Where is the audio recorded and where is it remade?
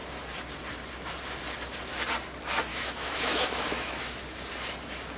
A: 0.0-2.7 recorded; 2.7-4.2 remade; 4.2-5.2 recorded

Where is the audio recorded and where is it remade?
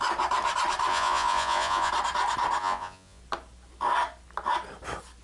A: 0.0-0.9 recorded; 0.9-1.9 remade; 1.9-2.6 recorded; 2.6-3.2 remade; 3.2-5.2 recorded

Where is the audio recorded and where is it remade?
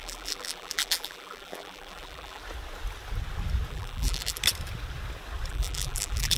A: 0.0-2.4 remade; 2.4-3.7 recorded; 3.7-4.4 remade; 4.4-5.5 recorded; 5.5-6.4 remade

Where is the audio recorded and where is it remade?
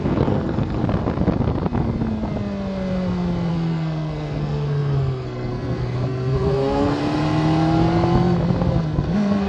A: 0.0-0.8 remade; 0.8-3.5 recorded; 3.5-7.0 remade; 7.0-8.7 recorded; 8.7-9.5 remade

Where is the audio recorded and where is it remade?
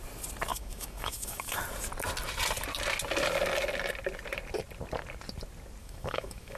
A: 0.0-0.5 recorded; 0.5-1.6 remade; 1.6-5.8 recorded; 5.8-6.6 remade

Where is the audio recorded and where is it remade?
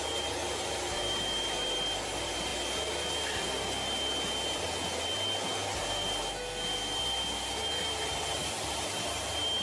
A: 0.0-2.5 remade; 2.5-7.8 recorded; 7.8-9.6 remade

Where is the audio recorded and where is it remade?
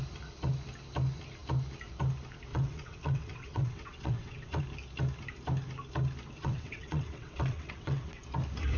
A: 0.0-2.5 recorded; 2.5-4.6 remade; 4.6-6.4 recorded; 6.4-8.2 remade; 8.2-8.8 recorded